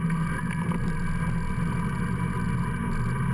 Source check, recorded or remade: recorded